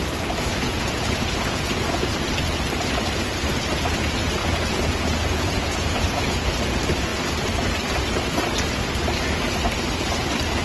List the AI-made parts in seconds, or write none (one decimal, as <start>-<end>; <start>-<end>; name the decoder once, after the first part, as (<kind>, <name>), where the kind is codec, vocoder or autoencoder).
0.5-2.1 (vocoder, Vocos); 4.4-6.5